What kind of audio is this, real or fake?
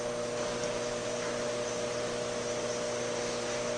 real